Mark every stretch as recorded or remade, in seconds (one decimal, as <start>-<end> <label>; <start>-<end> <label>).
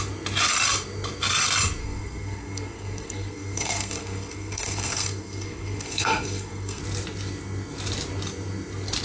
0.0-1.8 recorded; 1.8-6.8 remade; 6.8-9.0 recorded